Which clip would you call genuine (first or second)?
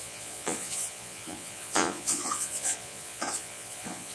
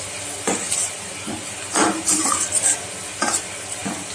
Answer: second